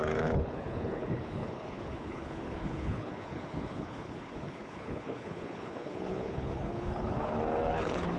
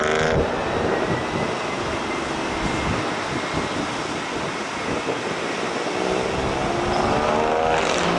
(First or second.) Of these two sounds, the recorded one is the second